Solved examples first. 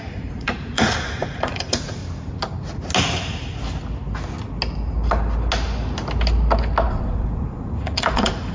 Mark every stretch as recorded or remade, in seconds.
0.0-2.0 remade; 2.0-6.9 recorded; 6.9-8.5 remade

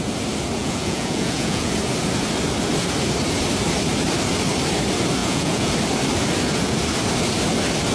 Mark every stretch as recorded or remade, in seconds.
0.0-0.6 recorded; 0.6-1.7 remade; 1.7-5.2 recorded; 5.2-5.7 remade; 5.7-7.9 recorded

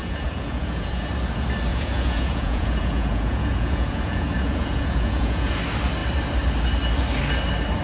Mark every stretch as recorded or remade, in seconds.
0.0-1.1 remade; 1.1-1.7 recorded; 1.7-5.5 remade; 5.5-7.8 recorded